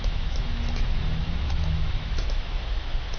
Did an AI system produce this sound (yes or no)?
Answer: yes